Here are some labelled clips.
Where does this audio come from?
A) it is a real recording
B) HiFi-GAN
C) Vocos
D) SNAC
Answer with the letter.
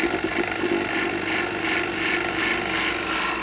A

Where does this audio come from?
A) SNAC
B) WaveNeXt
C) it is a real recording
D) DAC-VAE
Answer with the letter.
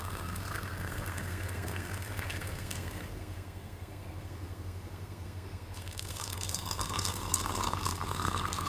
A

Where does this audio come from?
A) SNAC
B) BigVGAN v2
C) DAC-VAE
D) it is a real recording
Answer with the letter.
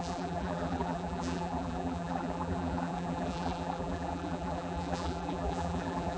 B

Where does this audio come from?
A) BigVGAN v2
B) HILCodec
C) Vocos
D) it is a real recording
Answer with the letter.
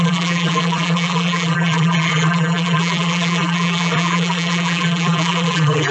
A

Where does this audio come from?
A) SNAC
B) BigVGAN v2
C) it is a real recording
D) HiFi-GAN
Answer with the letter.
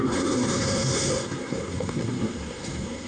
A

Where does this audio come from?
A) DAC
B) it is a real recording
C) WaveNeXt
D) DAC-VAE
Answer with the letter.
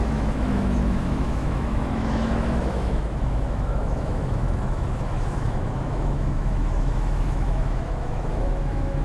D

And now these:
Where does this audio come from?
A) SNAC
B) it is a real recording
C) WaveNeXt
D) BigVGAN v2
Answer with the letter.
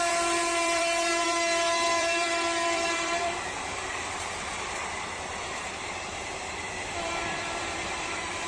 D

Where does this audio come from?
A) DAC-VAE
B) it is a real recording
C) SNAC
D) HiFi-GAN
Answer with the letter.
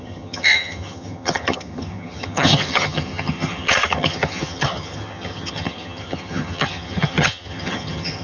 D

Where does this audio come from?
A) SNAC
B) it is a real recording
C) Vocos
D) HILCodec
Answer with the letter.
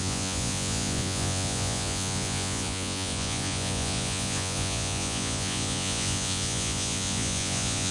C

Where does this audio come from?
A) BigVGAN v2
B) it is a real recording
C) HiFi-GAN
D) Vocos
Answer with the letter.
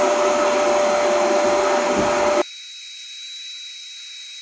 B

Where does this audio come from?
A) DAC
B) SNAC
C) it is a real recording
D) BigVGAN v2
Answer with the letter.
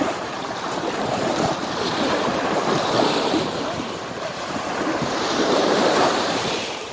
D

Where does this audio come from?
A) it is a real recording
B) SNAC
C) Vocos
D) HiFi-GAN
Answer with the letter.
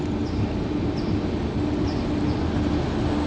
A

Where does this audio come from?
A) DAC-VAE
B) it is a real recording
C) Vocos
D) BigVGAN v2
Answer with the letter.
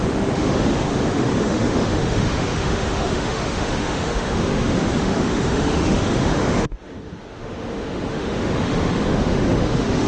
A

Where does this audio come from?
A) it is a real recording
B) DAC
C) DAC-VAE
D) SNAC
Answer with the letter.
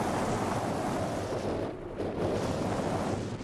A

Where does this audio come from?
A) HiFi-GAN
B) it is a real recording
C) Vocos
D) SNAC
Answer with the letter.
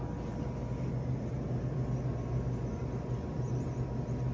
B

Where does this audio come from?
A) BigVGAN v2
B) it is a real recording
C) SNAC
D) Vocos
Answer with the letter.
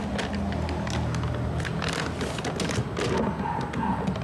B